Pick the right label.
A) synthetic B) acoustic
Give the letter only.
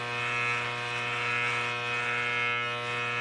B